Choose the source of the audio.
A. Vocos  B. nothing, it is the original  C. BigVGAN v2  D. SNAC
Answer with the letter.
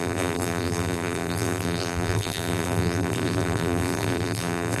C